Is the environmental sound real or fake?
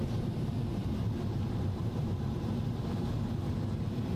fake